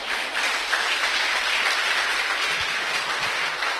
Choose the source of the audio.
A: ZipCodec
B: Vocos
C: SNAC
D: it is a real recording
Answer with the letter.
D